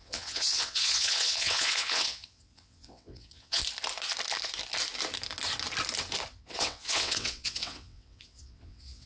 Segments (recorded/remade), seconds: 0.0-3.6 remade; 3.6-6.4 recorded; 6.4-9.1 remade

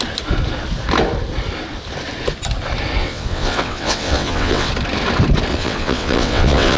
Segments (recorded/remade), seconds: 0.0-3.0 recorded; 3.0-4.7 remade; 4.7-5.5 recorded; 5.5-6.8 remade

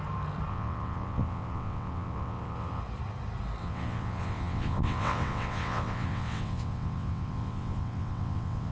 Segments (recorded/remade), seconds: 0.0-0.5 recorded; 0.5-2.8 remade; 2.8-3.6 recorded; 3.6-8.7 remade

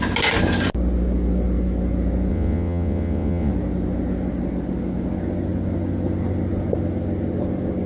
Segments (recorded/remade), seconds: 0.0-2.3 recorded; 2.3-3.5 remade; 3.5-7.9 recorded